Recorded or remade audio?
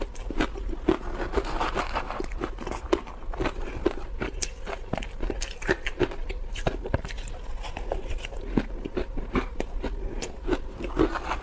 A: recorded